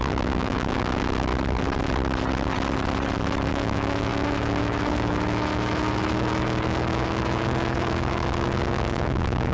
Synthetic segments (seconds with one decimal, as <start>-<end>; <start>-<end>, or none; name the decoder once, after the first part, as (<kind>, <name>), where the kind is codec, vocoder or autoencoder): 0.0-1.3 (autoencoder, DAC-VAE); 3.5-9.5